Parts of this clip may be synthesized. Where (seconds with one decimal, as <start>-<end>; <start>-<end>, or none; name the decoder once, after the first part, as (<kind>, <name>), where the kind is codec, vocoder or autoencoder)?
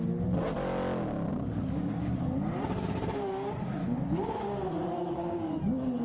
1.3-2.2 (codec, DAC); 3.8-5.6